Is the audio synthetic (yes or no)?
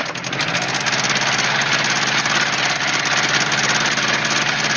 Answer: no